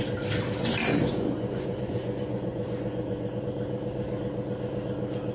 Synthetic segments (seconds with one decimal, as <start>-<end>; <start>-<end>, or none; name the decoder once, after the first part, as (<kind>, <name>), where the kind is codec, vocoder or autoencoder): 0.9-3.4 (vocoder, Vocos)